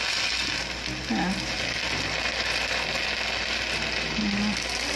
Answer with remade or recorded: recorded